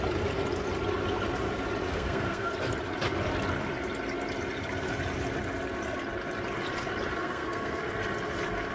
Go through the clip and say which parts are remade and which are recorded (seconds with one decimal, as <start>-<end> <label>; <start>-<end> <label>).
0.0-1.9 recorded; 1.9-2.5 remade; 2.5-7.2 recorded; 7.2-7.8 remade; 7.8-8.7 recorded